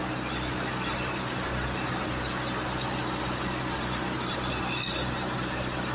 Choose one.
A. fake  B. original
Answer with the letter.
B